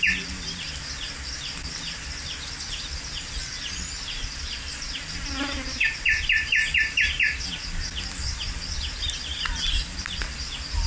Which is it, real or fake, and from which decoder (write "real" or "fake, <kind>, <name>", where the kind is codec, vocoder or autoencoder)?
real